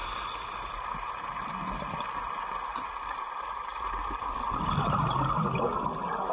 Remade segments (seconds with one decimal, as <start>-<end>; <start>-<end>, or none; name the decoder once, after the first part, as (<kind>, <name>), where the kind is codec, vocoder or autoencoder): 0.0-1.5 (vocoder, BigVGAN v2); 2.7-5.5